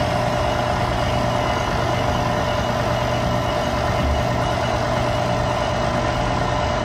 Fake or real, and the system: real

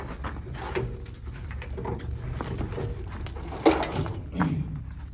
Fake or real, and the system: real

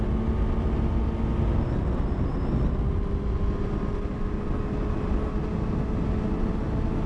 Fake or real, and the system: real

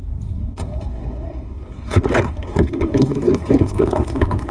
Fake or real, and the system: fake, codec, SNAC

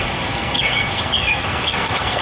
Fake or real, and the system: fake, codec, SNAC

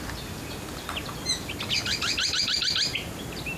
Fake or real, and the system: real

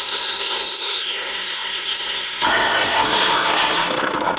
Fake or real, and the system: fake, codec, SNAC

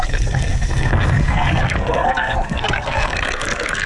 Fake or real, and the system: fake, codec, SNAC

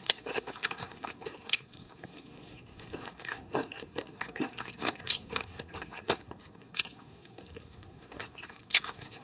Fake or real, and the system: fake, codec, SNAC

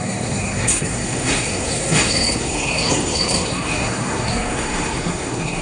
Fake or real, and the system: fake, codec, SNAC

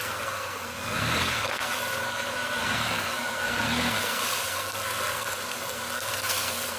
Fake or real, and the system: fake, codec, SNAC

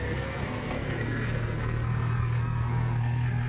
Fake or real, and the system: fake, codec, SNAC